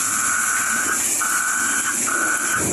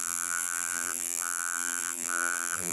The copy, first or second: second